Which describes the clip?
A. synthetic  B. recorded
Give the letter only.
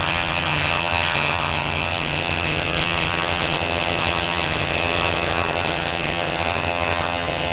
A